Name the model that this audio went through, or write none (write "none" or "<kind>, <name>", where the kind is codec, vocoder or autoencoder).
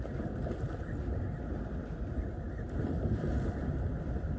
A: none